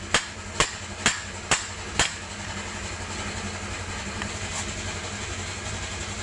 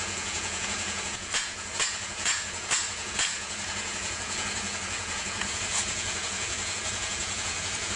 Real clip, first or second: first